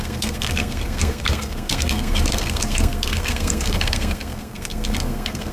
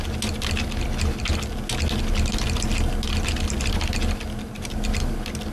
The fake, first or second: first